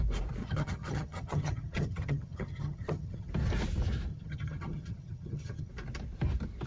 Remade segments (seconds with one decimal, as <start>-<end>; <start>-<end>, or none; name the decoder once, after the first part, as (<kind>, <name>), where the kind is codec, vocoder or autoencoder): 0.4-3.3 (vocoder, HiFi-GAN); 4.1-5.7